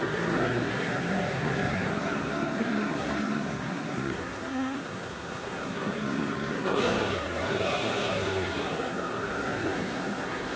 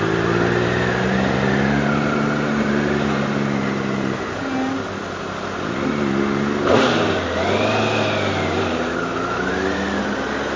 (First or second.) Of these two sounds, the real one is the second